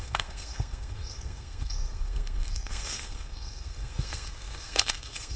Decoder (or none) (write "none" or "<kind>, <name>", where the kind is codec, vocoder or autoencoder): codec, SNAC